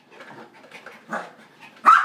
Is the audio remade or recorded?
recorded